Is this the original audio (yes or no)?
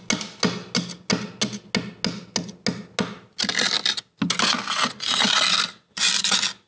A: yes